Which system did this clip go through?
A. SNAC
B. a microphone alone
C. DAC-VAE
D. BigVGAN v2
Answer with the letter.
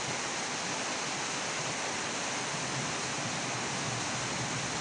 B